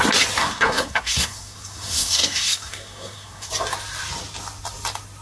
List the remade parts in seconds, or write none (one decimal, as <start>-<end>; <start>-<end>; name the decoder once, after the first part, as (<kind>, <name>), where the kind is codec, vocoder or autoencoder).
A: 0.4-3.5 (codec, SNAC)